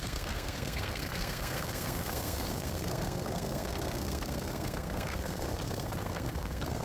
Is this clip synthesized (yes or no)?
yes